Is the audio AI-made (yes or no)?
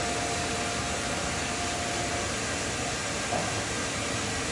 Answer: no